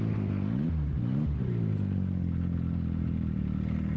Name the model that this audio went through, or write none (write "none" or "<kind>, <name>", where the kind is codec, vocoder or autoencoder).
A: none